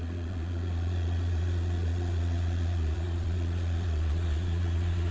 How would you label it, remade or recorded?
remade